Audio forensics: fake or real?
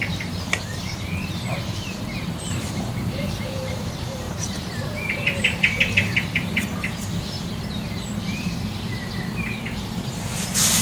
fake